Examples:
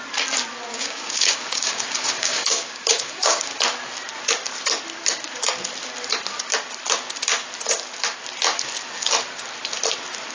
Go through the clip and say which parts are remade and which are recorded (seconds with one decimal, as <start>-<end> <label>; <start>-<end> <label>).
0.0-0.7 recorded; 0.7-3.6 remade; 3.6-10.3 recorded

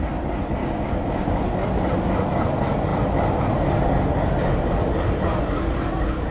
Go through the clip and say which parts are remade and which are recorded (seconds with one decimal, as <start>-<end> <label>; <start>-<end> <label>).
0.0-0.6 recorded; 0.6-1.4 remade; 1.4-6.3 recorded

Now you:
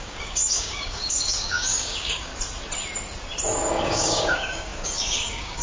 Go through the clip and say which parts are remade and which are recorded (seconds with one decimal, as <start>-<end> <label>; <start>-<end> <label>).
0.0-2.3 remade; 2.3-3.7 recorded; 3.7-5.6 remade

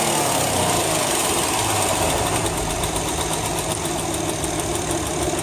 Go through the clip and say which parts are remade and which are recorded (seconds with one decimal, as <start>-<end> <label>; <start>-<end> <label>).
0.0-5.4 recorded

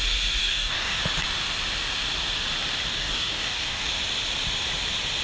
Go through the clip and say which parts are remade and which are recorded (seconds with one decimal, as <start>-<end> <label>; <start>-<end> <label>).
0.0-0.4 recorded; 0.4-1.0 remade; 1.0-2.9 recorded; 2.9-3.9 remade; 3.9-5.2 recorded

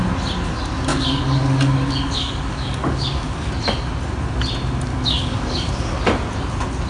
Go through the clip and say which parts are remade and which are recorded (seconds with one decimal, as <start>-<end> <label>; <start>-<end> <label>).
0.0-0.9 recorded; 0.9-3.5 remade; 3.5-4.9 recorded; 4.9-5.7 remade; 5.7-6.9 recorded

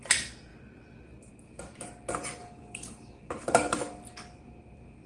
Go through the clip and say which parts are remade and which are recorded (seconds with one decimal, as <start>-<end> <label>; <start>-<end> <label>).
0.0-2.4 recorded; 2.4-3.3 remade; 3.3-5.1 recorded